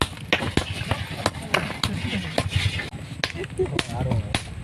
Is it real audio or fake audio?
real